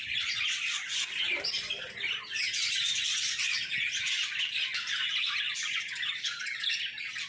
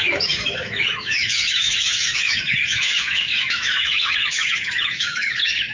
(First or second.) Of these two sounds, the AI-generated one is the second